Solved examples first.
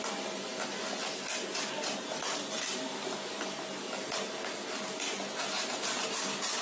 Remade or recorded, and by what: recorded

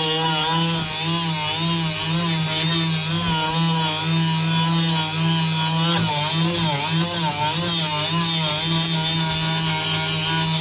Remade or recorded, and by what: recorded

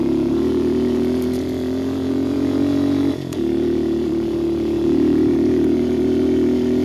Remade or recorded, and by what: remade, vocoder, Vocos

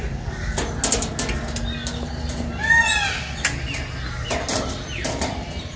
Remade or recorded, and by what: recorded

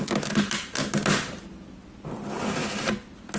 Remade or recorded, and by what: recorded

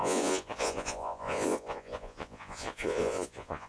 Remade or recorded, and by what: remade, vocoder, Vocos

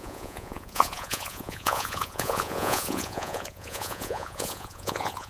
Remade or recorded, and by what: remade, vocoder, Vocos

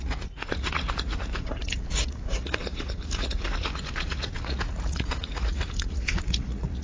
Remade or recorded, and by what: remade, vocoder, Vocos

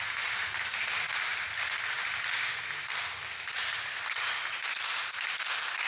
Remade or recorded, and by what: recorded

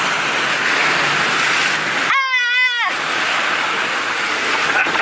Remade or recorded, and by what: recorded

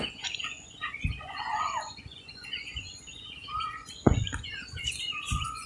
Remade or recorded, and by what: remade, vocoder, Vocos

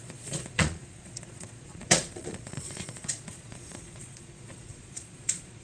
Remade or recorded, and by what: remade, vocoder, Vocos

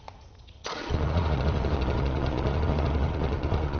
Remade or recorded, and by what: remade, vocoder, Vocos